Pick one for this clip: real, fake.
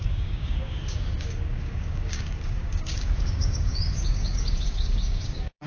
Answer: fake